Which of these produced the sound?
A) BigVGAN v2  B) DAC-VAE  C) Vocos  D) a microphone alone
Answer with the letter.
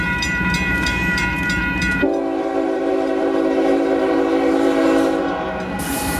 A